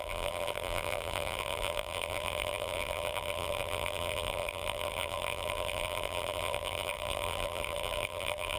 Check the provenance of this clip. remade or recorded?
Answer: remade